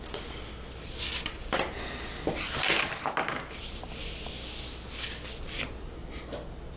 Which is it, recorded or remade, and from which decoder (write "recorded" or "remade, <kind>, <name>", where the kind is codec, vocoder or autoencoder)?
recorded